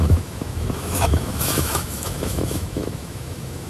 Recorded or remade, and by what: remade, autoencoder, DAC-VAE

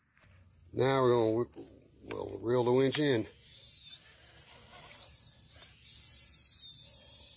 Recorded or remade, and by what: recorded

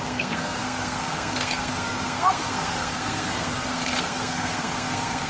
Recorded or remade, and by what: remade, codec, SNAC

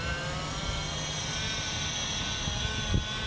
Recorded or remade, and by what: recorded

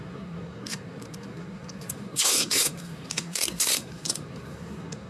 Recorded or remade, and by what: remade, codec, SNAC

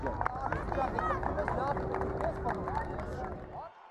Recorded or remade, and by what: recorded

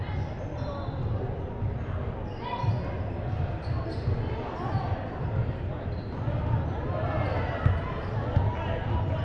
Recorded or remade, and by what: recorded